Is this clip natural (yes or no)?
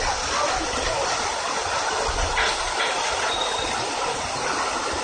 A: yes